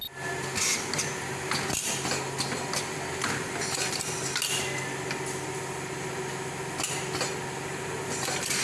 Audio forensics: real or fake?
real